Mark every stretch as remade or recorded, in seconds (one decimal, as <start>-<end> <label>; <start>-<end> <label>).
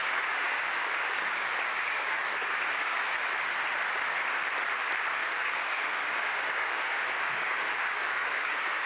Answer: 0.0-3.1 remade; 3.1-5.1 recorded; 5.1-8.9 remade